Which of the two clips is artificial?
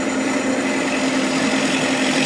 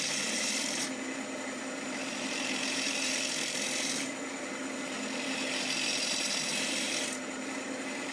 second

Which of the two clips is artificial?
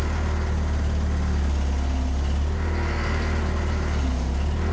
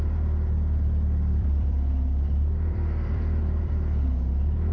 second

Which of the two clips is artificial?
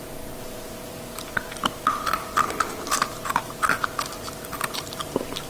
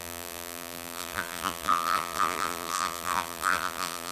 second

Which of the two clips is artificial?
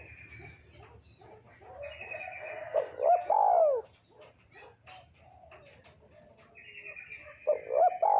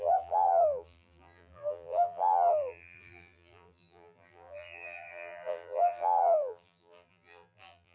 second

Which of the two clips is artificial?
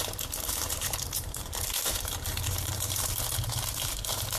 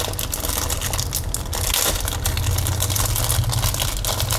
first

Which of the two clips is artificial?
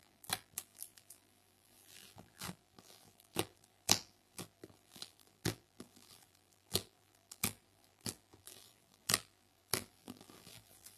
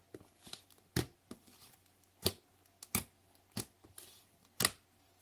first